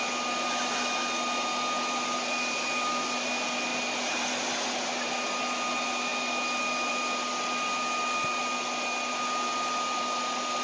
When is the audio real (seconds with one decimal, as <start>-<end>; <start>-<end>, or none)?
0.0-10.6